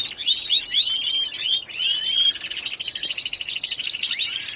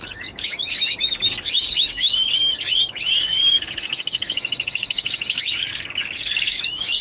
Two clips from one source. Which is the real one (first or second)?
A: first